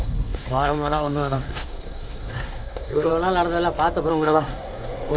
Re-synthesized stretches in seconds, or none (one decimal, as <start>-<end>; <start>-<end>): 0.0-3.1; 4.1-5.2